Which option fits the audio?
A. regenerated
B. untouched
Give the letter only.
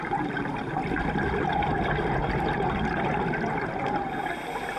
B